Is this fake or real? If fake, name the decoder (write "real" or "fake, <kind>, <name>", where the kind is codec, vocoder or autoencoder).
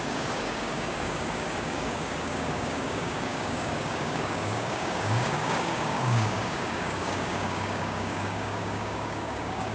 fake, codec, DAC